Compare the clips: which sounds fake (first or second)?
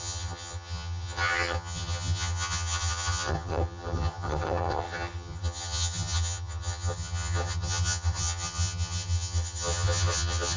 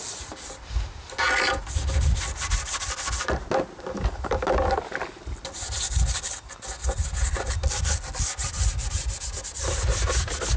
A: first